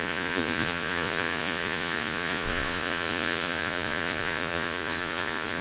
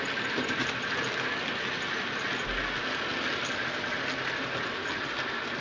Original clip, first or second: second